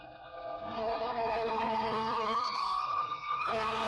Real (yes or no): no